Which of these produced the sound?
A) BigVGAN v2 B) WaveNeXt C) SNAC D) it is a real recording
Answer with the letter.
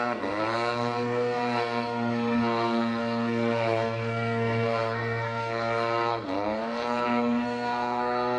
C